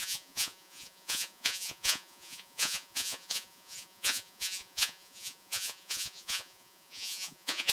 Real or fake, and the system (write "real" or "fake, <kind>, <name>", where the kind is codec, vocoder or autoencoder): fake, vocoder, Vocos